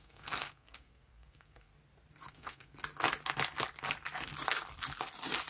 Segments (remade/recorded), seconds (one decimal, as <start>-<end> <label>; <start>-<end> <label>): 0.0-1.7 remade; 1.7-2.3 recorded; 2.3-2.7 remade; 2.7-5.5 recorded